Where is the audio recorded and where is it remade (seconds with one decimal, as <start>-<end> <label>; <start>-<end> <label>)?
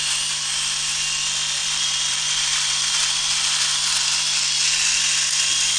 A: 0.0-1.6 recorded; 1.6-3.8 remade; 3.8-5.8 recorded